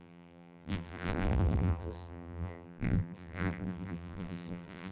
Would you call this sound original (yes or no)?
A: no